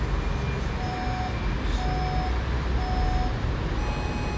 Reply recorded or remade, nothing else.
recorded